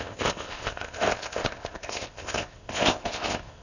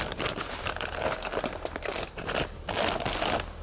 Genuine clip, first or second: second